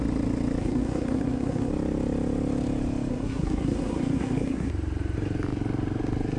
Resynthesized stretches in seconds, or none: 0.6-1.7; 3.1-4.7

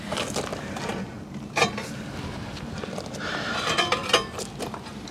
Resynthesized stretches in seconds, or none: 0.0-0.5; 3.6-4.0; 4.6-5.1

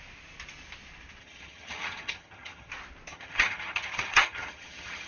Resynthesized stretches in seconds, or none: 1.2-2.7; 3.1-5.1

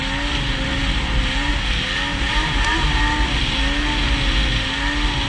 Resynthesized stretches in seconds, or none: 0.8-1.5; 2.1-3.0